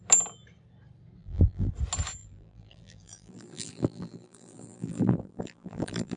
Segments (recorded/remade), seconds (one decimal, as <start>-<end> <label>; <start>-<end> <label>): 0.0-1.2 recorded; 1.2-1.7 remade; 1.7-2.2 recorded; 2.2-6.2 remade